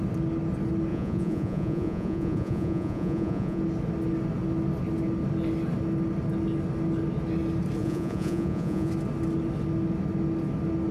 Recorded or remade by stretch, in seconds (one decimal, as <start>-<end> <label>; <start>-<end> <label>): 0.0-0.9 recorded; 0.9-3.6 remade; 3.6-7.8 recorded; 7.8-8.9 remade; 8.9-10.9 recorded